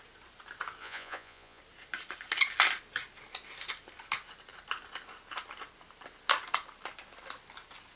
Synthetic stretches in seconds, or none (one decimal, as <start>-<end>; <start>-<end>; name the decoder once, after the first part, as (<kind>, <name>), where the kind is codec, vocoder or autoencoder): 0.8-1.6 (vocoder, Vocos)